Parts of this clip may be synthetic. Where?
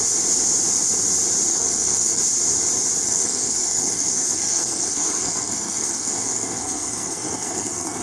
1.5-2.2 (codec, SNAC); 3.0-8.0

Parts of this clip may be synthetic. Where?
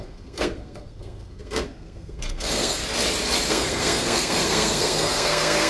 0.0-2.8 (codec, SNAC); 3.5-5.7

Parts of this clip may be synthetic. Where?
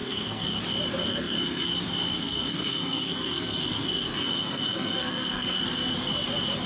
0.0-0.6 (codec, SNAC); 1.0-1.7; 2.1-5.6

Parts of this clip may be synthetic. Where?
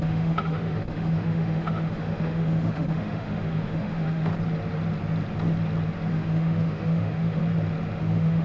0.0-4.3 (autoencoder, DAC-VAE); 6.1-7.4; 8.0-8.4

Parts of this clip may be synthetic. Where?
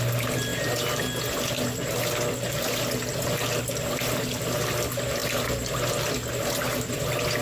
none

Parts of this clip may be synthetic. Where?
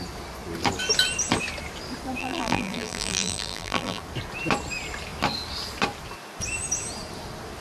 2.2-4.0 (vocoder, BigVGAN v2)